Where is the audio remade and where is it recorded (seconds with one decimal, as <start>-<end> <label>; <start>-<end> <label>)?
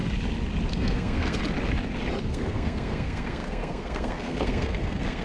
0.0-0.7 recorded; 0.7-1.4 remade; 1.4-2.2 recorded; 2.2-5.2 remade